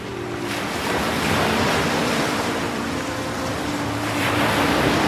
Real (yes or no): no